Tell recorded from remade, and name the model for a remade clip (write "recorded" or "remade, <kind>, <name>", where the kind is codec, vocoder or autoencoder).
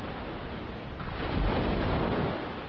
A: recorded